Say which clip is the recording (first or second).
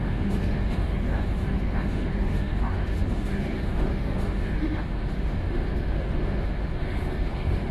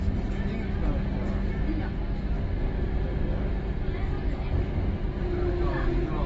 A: second